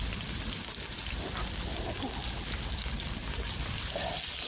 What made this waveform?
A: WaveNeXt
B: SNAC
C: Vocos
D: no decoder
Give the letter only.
D